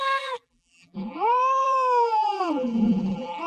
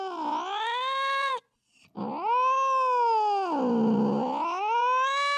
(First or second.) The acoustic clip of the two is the second